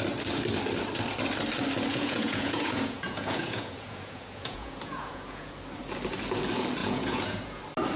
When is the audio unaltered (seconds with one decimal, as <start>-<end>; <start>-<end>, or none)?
0.0-1.9; 5.5-6.8; 7.6-8.0